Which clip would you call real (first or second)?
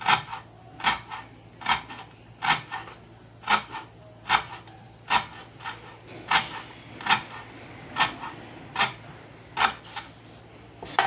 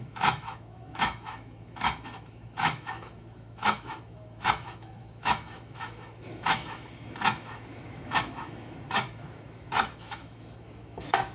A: first